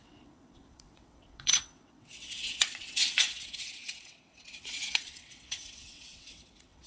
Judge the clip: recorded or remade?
remade